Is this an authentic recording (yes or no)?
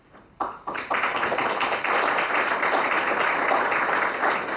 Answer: yes